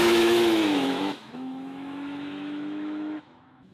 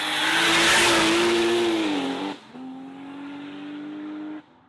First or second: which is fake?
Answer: first